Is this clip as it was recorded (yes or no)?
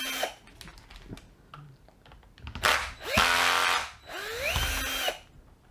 yes